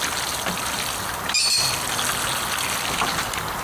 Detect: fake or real real